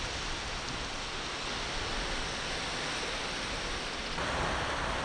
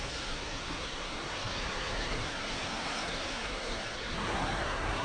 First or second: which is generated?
second